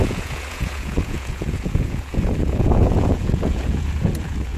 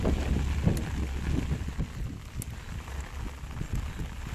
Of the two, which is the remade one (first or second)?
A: first